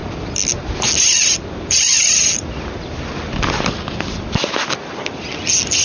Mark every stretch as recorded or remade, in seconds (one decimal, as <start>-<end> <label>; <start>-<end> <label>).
0.0-5.8 recorded